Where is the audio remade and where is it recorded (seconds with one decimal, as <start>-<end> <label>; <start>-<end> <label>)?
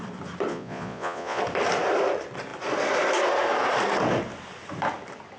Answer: 0.0-0.5 recorded; 0.5-1.4 remade; 1.4-5.4 recorded